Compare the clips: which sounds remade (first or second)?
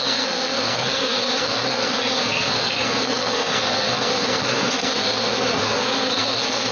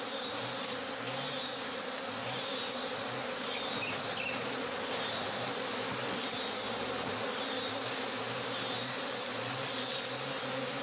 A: first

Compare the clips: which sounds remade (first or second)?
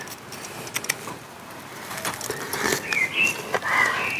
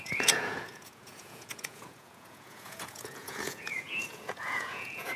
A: second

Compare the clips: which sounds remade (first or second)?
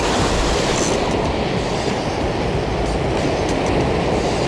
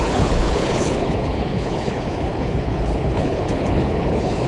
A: second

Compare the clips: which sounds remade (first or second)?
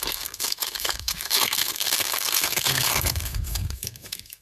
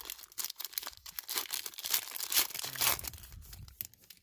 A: first